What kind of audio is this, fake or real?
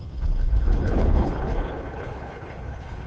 fake